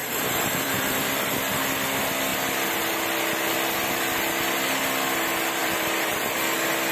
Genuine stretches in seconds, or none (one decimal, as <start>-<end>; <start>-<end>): 1.2-5.6; 6.2-6.9

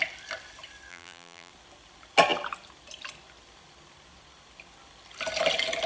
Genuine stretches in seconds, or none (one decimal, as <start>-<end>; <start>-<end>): 0.0-0.9; 1.5-5.9

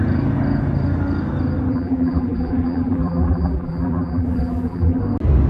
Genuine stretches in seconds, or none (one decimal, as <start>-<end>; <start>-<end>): 0.0-1.7; 5.0-5.5

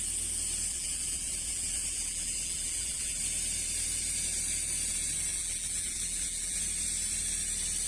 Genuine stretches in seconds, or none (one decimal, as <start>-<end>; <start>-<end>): 0.0-0.7; 3.2-5.3; 6.6-7.9